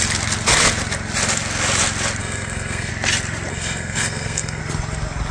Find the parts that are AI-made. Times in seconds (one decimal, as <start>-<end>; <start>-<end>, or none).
2.2-2.9; 3.5-4.6